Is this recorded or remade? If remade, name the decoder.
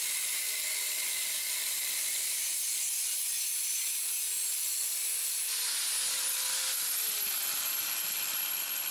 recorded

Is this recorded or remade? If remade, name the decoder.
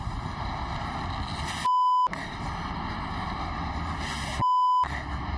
recorded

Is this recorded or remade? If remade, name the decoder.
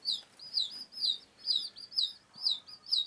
recorded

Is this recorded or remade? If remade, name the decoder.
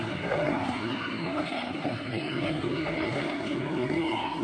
remade, codec, SNAC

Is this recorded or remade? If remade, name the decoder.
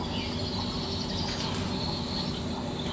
recorded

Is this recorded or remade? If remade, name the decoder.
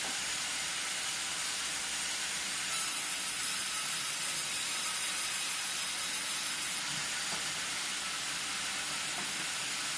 recorded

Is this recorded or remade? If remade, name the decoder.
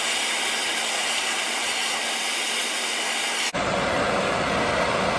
recorded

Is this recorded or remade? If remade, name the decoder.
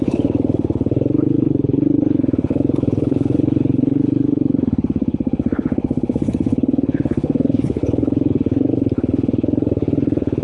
remade, codec, HILCodec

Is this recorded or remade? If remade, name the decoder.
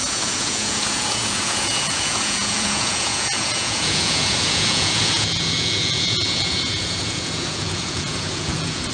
remade, vocoder, Vocos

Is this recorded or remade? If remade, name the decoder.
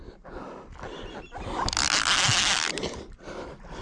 recorded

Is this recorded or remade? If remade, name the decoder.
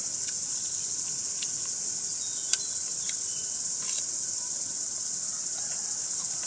recorded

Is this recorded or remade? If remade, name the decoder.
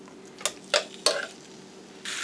recorded